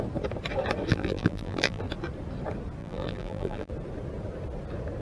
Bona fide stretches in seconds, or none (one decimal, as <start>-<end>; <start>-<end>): 0.0-0.9; 1.8-2.8; 3.7-5.0